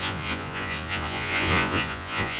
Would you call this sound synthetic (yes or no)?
yes